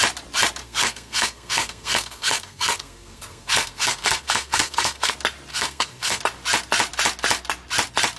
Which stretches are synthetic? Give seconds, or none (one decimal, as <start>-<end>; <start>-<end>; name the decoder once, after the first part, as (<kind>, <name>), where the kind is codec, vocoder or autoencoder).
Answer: 0.6-5.1 (codec, SNAC); 5.5-6.2